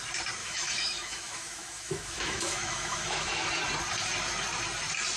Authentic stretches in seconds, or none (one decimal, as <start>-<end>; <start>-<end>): 0.0-0.4; 3.5-5.2

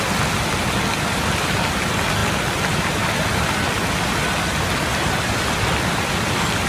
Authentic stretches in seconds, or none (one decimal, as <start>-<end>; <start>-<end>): 0.0-6.7

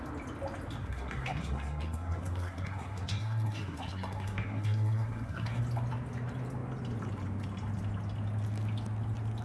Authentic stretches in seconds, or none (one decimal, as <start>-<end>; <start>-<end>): 0.0-0.8; 5.6-9.4

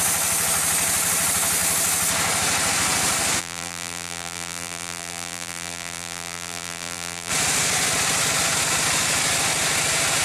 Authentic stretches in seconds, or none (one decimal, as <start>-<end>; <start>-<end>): 0.0-3.4; 7.3-10.2

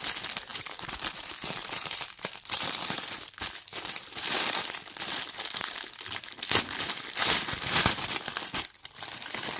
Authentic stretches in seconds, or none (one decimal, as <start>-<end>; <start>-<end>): 0.0-0.5; 3.3-3.7; 4.8-9.6

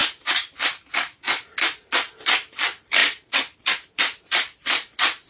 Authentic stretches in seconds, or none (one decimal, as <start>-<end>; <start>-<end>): 0.0-2.5

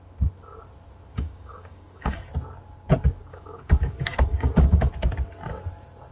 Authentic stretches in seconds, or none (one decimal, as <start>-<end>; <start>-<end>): 0.0-1.1; 2.3-3.3; 4.9-6.1

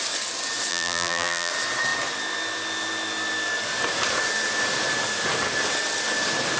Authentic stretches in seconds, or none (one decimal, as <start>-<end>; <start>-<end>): 0.0-0.7; 1.5-6.6